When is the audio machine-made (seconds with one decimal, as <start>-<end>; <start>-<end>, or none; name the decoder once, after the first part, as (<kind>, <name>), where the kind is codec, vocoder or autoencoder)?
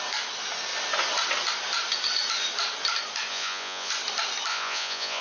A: 3.3-3.9 (vocoder, Vocos); 4.5-5.2